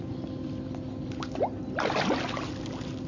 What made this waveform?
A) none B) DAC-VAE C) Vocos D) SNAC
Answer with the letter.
A